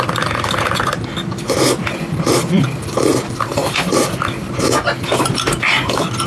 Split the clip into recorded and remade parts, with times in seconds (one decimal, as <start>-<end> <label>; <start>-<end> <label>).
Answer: 0.0-6.3 recorded